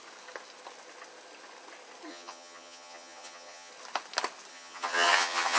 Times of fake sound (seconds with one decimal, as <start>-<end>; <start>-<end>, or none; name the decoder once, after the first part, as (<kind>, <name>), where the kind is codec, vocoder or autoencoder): 2.1-3.7 (vocoder, HiFi-GAN); 4.5-5.6